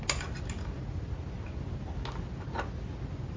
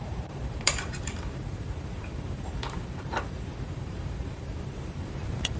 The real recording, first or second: first